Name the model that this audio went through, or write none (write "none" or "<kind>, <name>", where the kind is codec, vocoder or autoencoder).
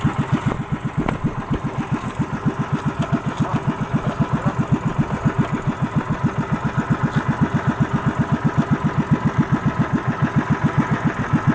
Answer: none